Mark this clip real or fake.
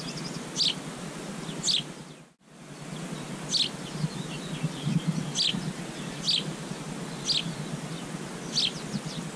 real